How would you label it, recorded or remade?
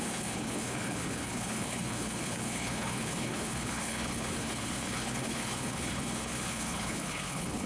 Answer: remade